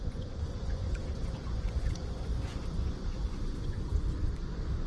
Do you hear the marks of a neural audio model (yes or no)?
yes